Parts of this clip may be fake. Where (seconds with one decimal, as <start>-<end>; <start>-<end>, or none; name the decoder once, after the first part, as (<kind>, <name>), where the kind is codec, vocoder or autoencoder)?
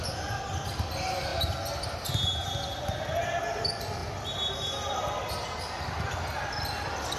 none